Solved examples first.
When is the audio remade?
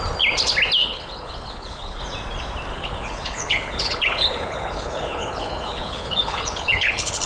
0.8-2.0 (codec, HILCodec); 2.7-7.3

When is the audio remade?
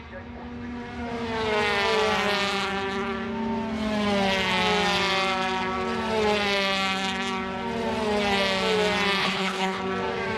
9.2-9.8 (codec, HILCodec)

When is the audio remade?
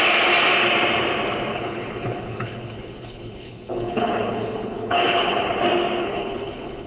1.5-5.6 (codec, HILCodec); 6.0-6.9